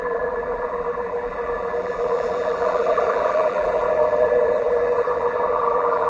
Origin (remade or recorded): remade